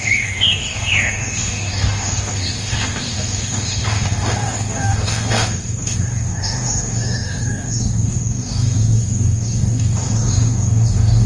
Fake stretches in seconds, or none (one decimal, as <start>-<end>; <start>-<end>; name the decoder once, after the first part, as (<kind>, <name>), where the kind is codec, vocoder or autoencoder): 0.0-11.3 (codec, DAC)